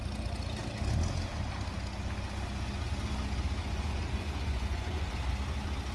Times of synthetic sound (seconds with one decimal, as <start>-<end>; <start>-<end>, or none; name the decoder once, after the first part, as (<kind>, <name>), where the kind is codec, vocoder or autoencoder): 3.6-5.1 (vocoder, Vocos)